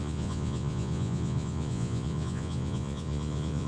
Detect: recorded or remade remade